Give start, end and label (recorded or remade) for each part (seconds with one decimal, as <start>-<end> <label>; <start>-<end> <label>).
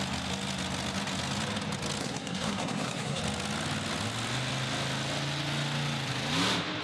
0.0-2.0 recorded; 2.0-3.2 remade; 3.2-6.8 recorded